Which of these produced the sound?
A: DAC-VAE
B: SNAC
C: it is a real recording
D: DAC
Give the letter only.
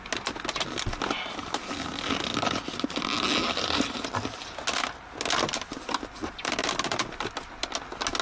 C